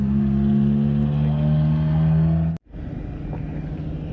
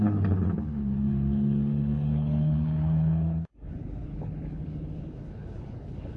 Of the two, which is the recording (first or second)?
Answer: first